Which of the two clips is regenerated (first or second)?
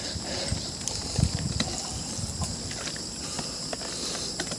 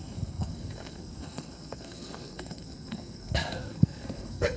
second